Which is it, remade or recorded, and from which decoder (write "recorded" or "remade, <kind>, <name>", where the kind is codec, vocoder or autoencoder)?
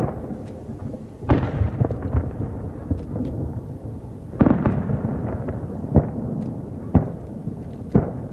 recorded